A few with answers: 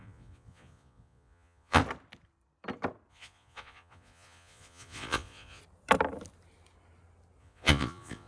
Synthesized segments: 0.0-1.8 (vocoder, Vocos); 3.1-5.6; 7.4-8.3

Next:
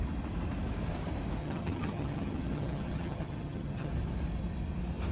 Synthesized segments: 1.4-3.9 (vocoder, HiFi-GAN)

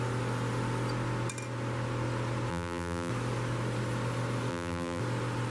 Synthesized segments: 2.5-3.1 (vocoder, BigVGAN v2); 4.5-5.0

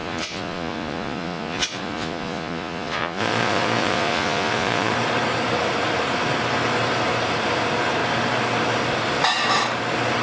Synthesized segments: 0.0-4.9 (vocoder, Vocos)

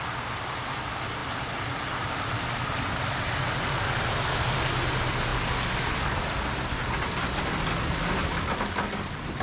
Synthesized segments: none

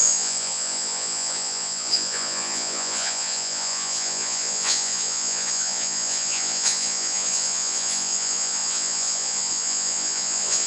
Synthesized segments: 0.0-10.7 (vocoder, Vocos)

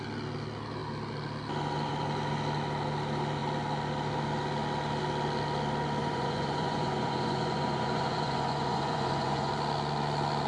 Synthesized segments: 6.0-9.5 (vocoder, Vocos)